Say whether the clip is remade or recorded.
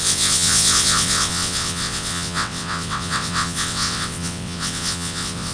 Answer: remade